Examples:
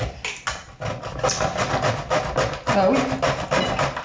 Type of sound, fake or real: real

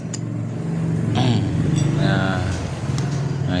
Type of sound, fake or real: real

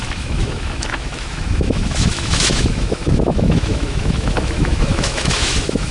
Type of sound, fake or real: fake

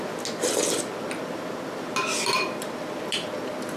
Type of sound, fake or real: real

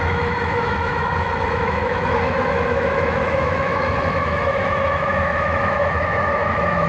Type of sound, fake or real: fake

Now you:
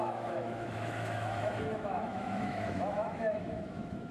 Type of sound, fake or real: fake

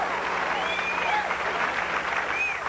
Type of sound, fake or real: real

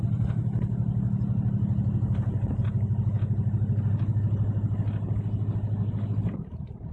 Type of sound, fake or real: real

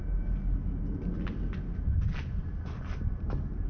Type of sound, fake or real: real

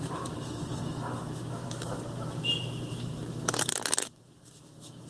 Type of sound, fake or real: fake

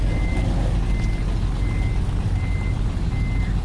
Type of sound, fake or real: real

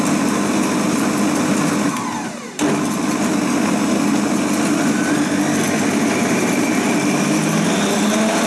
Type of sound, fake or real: real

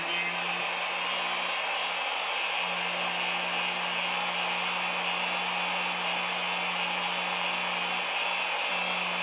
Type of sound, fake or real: real